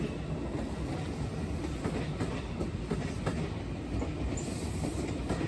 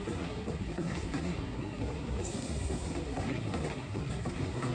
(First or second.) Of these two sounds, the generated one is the second